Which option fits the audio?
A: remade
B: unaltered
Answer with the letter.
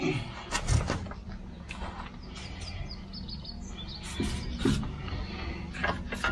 B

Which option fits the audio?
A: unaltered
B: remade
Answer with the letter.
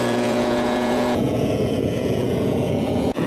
B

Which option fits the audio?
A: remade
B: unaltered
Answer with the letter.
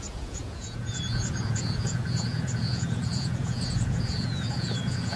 A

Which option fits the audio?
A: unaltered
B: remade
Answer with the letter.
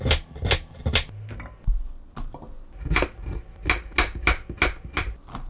A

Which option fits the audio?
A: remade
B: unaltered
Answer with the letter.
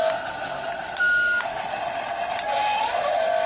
B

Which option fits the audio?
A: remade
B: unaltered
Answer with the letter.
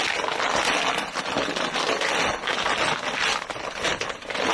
B